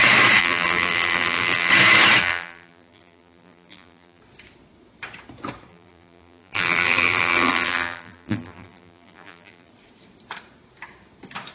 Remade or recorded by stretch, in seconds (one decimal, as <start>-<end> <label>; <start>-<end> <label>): 0.0-0.4 recorded; 0.4-1.7 remade; 1.7-2.2 recorded; 2.2-4.2 remade; 4.2-5.7 recorded; 5.7-9.7 remade; 9.7-11.5 recorded